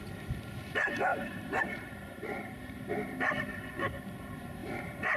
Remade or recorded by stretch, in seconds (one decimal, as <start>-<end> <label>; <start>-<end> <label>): 0.0-1.1 recorded; 1.1-2.9 remade; 2.9-4.6 recorded; 4.6-5.2 remade